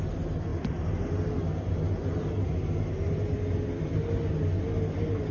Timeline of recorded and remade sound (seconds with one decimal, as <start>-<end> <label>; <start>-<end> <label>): 0.0-5.3 recorded